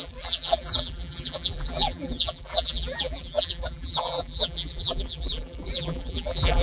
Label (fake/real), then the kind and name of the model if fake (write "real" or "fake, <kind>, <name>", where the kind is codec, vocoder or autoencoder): fake, vocoder, BigVGAN v2